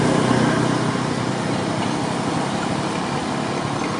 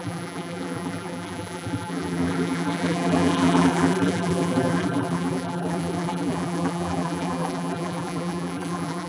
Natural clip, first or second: first